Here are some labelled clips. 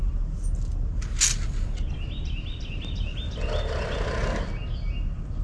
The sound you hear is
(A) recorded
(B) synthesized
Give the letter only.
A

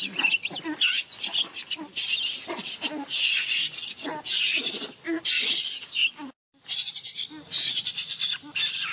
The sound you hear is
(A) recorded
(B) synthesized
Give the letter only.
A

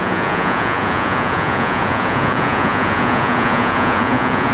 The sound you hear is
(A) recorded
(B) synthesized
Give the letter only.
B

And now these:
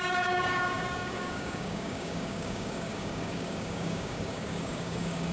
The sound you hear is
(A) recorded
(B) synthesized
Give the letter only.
B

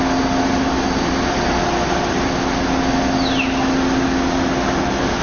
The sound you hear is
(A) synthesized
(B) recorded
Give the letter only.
B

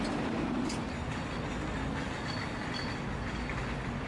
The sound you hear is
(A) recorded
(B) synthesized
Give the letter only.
A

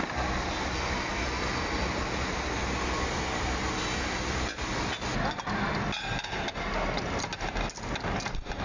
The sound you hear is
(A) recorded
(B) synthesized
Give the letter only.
A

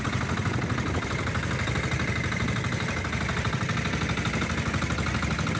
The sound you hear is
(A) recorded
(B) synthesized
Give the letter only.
A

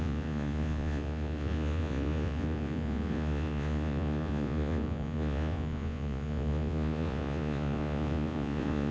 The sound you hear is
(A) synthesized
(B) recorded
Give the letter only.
A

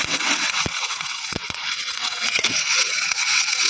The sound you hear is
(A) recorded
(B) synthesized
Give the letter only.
B